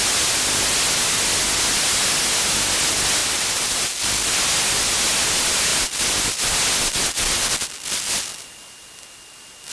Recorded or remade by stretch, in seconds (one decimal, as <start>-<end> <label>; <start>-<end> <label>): 0.0-3.2 recorded; 3.2-3.8 remade; 3.8-9.7 recorded